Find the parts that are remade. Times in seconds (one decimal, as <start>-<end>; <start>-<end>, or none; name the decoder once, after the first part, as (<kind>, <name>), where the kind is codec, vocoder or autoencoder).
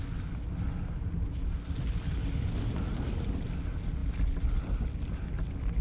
none